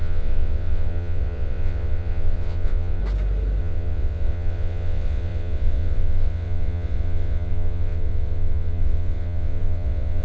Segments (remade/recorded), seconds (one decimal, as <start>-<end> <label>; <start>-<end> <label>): 0.0-3.0 remade; 3.0-3.6 recorded; 3.6-10.2 remade

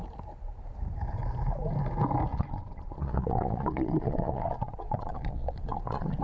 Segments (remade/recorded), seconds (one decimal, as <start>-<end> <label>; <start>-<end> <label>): 0.0-2.3 recorded; 2.3-6.2 remade

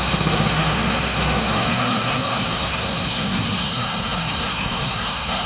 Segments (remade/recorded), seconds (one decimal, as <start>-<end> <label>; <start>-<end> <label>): 0.0-5.5 remade

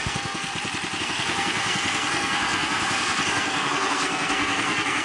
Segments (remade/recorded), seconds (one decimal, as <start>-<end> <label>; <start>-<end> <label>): 0.0-0.5 remade; 0.5-1.0 recorded; 1.0-5.0 remade

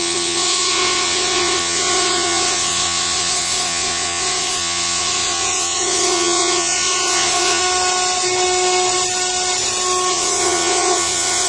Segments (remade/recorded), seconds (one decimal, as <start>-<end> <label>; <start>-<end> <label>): 0.0-7.6 remade; 7.6-10.1 recorded; 10.1-11.5 remade

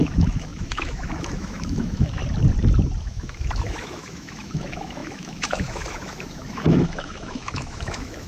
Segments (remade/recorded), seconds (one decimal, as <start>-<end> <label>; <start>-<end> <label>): 0.0-2.2 remade; 2.2-3.0 recorded; 3.0-8.3 remade